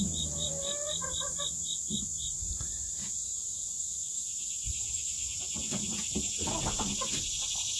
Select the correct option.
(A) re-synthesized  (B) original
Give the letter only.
B